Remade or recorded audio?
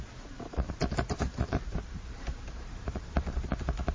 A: remade